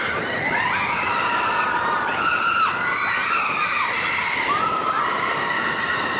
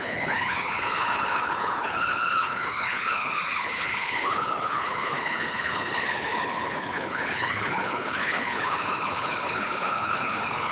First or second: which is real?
first